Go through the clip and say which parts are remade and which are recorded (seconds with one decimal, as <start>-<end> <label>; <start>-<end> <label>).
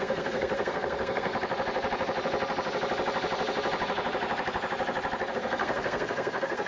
0.0-1.3 remade; 1.3-5.3 recorded; 5.3-6.7 remade